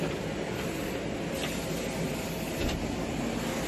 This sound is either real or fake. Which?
real